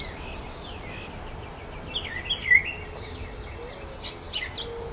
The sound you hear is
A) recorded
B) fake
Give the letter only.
A